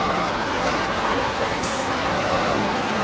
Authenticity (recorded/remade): remade